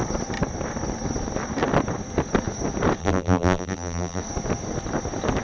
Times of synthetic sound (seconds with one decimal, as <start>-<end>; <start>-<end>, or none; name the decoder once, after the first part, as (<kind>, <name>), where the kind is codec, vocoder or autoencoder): 3.0-4.2 (vocoder, BigVGAN v2)